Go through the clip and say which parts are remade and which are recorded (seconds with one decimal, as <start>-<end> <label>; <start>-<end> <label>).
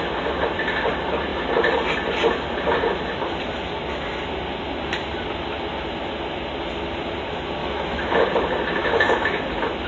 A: 0.0-7.6 recorded; 7.6-8.2 remade; 8.2-8.8 recorded; 8.8-9.4 remade; 9.4-9.9 recorded